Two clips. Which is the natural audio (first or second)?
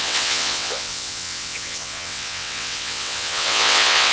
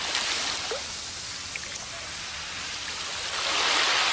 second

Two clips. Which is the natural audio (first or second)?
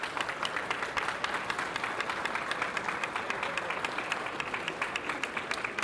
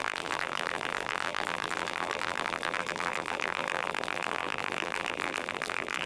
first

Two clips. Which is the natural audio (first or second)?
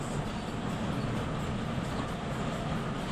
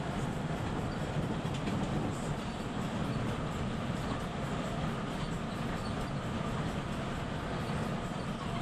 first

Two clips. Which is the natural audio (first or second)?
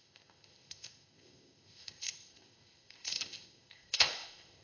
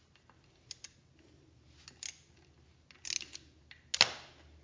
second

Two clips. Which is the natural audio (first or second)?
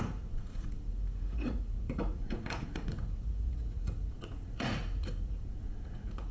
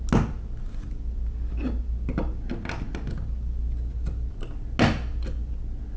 second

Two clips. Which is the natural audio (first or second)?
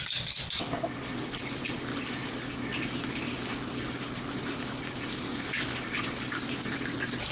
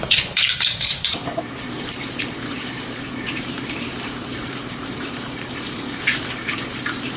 first